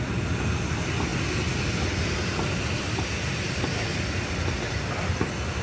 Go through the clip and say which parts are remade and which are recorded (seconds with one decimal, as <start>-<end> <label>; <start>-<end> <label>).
0.0-5.6 recorded